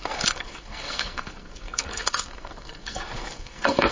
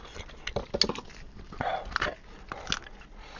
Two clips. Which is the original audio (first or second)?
second